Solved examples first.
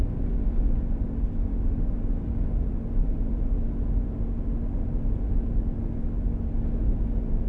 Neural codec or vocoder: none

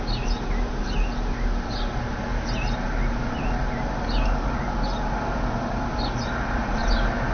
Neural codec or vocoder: none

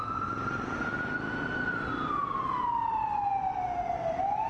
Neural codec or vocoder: none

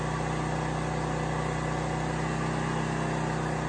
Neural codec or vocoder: none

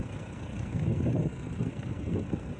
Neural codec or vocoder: codec, SNAC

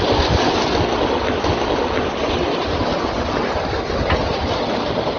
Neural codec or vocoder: none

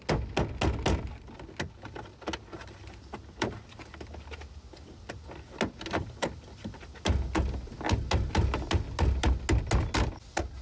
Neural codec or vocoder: none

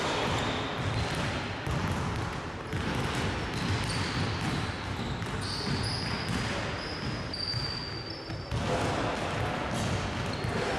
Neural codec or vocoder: none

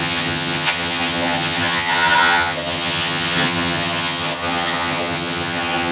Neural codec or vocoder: vocoder, HiFi-GAN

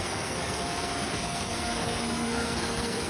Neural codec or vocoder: codec, SNAC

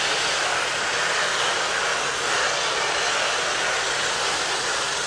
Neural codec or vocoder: none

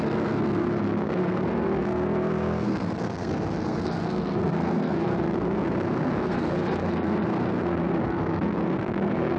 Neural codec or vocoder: codec, SNAC